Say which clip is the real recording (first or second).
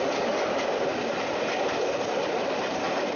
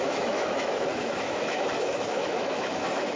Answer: first